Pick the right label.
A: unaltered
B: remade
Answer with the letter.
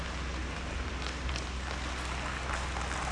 A